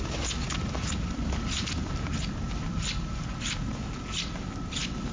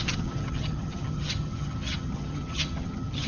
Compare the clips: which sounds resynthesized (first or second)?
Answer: second